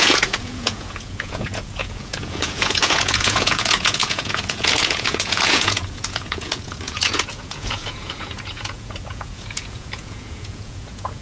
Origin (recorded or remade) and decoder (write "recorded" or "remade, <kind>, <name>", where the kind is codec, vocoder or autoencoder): remade, vocoder, Vocos